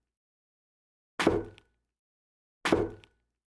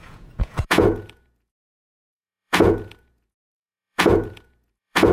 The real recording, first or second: first